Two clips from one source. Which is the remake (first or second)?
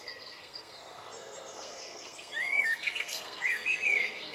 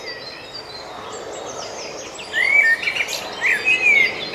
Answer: first